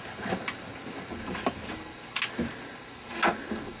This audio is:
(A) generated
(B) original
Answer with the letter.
B